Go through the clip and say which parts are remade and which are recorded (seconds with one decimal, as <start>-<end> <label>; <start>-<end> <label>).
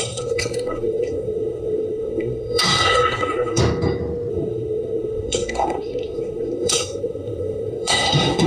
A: 0.0-3.6 remade; 3.6-4.3 recorded; 4.3-8.5 remade